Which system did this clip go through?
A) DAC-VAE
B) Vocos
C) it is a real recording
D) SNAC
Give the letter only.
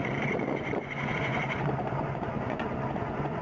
B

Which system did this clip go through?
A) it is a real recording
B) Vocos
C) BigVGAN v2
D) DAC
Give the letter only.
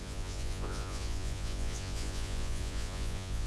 B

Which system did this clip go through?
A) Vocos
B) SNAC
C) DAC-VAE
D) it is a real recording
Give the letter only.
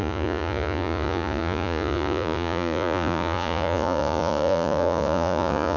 A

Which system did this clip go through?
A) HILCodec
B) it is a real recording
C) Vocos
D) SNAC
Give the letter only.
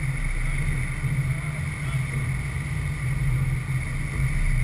B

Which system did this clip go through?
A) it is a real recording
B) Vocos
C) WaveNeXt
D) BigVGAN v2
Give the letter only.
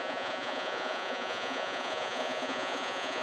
B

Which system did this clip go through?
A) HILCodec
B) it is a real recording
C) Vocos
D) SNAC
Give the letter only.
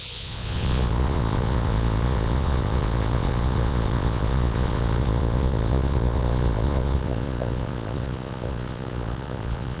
C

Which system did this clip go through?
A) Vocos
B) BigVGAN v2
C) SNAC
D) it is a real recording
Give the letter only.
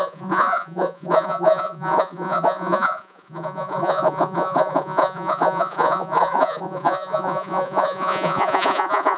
A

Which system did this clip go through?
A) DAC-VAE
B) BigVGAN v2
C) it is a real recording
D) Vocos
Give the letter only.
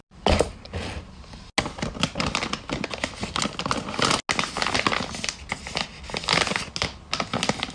C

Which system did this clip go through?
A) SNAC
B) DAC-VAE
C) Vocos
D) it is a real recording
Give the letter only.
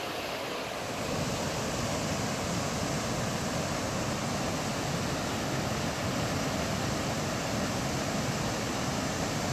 D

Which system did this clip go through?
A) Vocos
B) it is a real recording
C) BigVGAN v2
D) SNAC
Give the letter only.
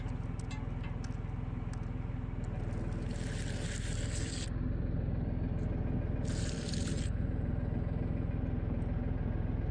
B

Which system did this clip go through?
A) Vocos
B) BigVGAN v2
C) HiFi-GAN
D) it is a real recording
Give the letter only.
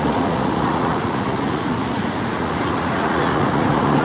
A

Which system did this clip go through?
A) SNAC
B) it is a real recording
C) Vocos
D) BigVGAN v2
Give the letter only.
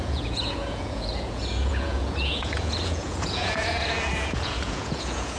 C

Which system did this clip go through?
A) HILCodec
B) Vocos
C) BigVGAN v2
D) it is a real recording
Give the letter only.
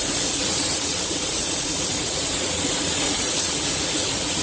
B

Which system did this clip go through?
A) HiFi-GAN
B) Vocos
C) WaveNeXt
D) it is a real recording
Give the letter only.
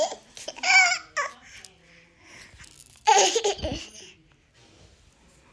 D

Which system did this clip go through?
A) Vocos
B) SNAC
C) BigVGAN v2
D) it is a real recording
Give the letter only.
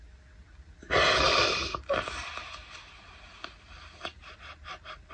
D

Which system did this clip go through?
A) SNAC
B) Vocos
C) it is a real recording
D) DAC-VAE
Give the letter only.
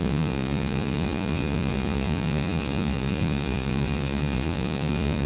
B